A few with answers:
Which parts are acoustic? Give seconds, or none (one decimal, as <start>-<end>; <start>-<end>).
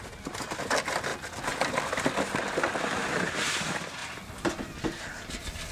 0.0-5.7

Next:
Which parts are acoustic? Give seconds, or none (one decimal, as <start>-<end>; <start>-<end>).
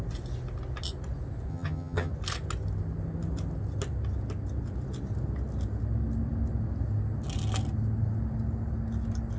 0.0-1.5; 2.1-9.4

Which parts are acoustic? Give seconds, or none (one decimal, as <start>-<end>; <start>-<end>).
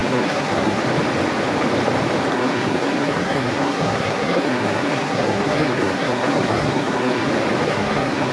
0.8-2.3; 7.3-7.7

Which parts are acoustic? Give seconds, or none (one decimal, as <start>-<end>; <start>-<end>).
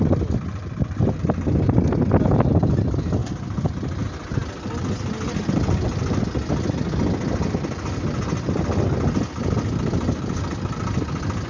0.0-11.5